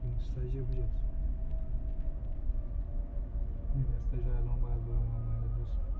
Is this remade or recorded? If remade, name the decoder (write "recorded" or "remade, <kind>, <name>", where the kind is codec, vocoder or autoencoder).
recorded